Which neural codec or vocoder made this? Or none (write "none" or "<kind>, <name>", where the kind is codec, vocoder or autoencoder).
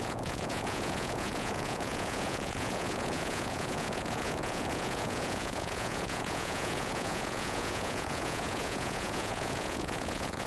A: vocoder, Vocos